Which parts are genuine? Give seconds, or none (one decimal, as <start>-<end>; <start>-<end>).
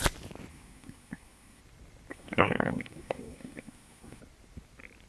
0.0-0.5; 1.6-2.1; 4.2-5.1